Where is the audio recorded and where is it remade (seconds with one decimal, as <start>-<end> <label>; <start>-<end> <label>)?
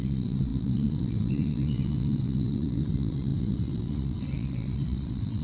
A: 0.0-5.4 remade